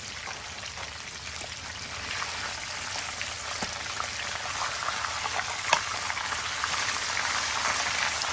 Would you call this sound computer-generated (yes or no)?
no